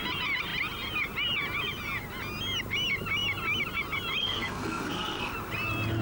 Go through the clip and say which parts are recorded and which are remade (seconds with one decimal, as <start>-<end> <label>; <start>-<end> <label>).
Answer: 0.0-4.2 recorded; 4.2-5.3 remade; 5.3-6.0 recorded